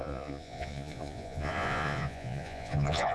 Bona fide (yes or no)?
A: no